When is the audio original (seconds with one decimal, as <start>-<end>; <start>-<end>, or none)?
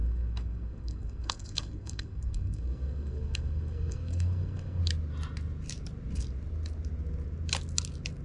4.8-8.2